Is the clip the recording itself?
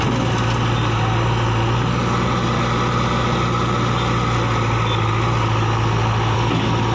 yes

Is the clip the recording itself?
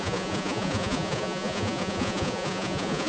no